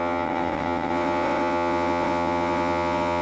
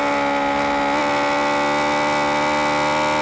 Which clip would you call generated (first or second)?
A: first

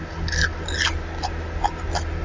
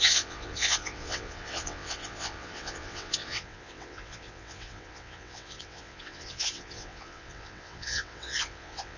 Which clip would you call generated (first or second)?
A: second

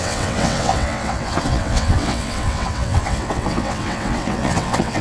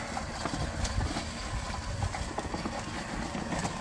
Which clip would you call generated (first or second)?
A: first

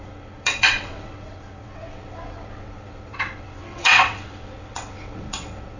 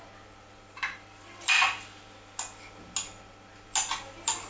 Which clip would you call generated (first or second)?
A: first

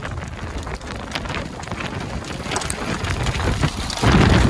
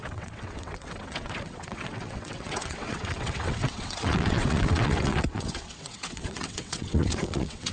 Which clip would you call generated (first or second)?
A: second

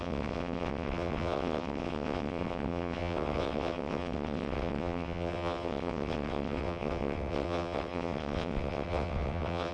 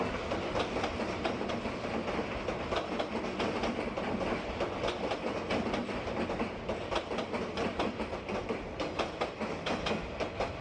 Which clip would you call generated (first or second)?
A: first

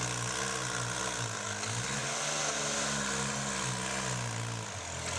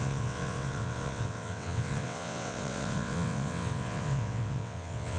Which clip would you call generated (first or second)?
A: second